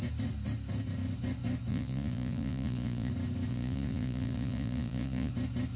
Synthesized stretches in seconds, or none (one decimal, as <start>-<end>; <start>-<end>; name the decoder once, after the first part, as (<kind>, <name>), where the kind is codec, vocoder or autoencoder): 1.7-3.1 (vocoder, Vocos); 3.5-5.3